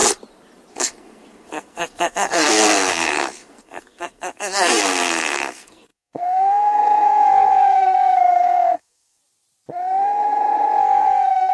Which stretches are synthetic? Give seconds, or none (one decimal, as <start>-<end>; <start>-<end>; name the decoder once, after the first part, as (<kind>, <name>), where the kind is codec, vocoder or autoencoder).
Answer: 0.7-9.2 (codec, SNAC); 10.8-11.5